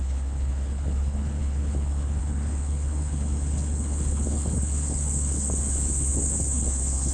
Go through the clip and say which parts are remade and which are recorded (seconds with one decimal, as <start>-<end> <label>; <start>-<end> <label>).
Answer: 0.0-7.1 remade